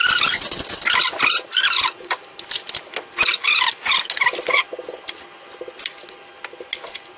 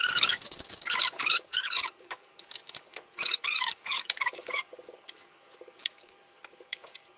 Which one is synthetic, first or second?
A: second